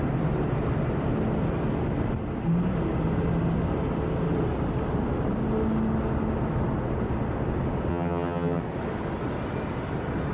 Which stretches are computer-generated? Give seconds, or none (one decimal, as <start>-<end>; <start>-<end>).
7.9-8.6